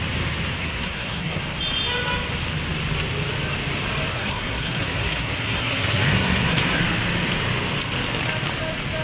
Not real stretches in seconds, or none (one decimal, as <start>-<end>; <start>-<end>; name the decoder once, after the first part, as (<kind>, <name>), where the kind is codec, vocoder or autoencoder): 0.6-1.4 (codec, SNAC); 4.1-6.8